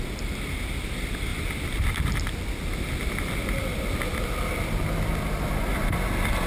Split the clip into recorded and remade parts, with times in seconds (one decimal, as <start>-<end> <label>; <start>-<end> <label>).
0.0-6.5 recorded